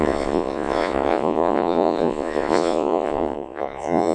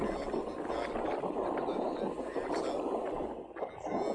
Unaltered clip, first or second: second